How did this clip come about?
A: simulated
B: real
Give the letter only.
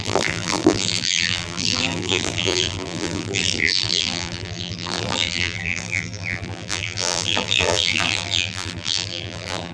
A